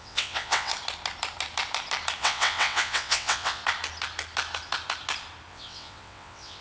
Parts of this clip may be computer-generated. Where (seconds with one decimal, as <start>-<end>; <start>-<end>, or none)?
0.0-0.7; 2.2-3.6; 5.5-6.6